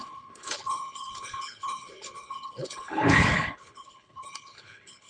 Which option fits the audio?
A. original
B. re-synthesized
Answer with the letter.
B